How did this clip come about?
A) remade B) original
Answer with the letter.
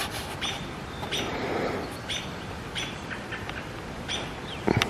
A